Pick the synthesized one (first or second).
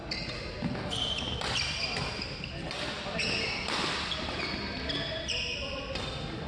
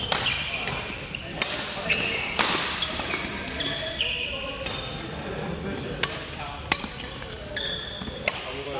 second